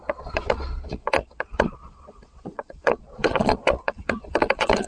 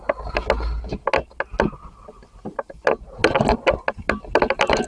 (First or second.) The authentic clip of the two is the second